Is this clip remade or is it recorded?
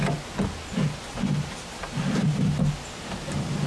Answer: recorded